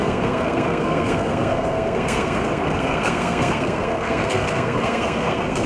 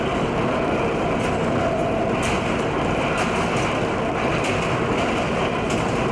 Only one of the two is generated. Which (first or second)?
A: first